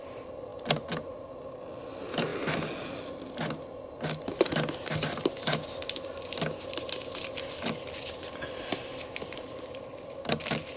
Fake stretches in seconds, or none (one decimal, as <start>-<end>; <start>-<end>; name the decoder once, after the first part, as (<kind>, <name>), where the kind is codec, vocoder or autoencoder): none